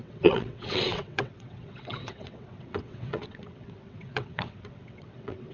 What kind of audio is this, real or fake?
fake